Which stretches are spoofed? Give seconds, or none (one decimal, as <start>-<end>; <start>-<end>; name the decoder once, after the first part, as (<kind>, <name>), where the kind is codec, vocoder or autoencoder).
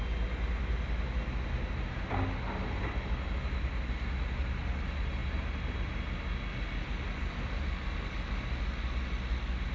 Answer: none